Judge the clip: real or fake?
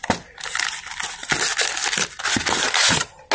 real